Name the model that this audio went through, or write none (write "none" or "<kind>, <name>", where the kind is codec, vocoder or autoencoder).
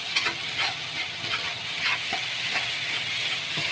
vocoder, HiFi-GAN